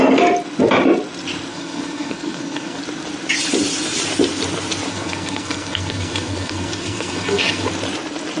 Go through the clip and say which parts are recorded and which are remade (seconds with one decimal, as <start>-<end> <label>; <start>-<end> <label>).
0.0-1.5 recorded; 1.5-2.8 remade; 2.8-4.9 recorded; 4.9-7.7 remade; 7.7-8.4 recorded